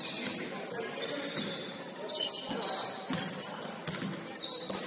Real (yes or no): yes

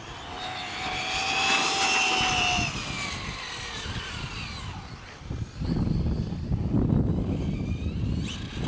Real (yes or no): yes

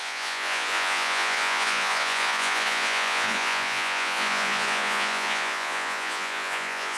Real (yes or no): no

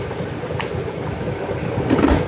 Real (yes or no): yes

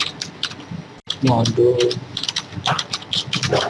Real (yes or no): yes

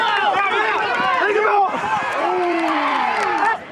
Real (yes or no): no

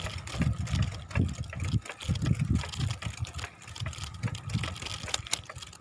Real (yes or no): yes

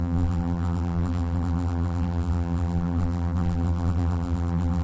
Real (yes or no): no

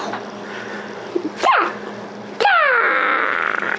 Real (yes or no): yes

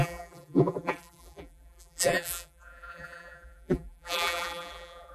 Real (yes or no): no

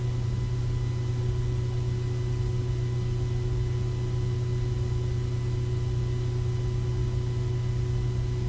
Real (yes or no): yes